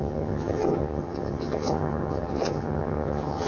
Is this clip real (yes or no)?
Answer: no